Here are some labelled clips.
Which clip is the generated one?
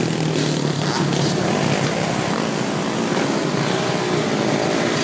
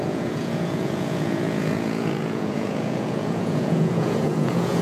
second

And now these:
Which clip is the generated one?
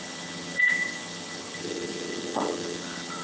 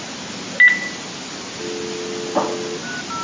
first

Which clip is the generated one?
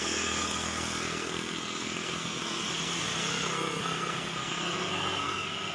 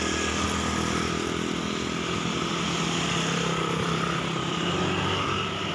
first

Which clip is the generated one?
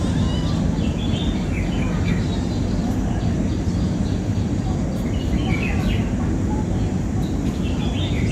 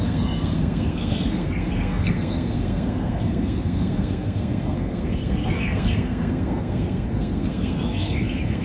second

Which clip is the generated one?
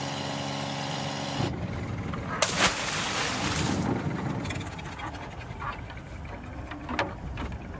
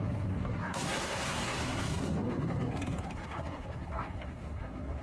second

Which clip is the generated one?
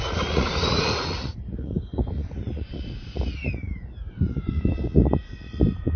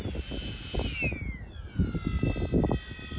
first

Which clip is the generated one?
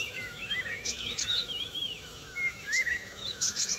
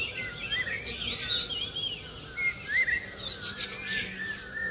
first